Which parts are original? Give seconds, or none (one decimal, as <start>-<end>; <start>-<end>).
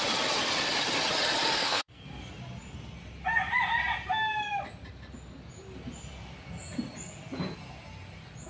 0.0-1.6; 2.3-8.5